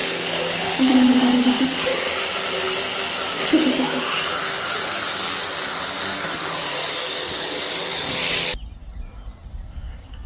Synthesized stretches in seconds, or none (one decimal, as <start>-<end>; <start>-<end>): 0.0-1.9; 5.5-8.2; 9.5-10.3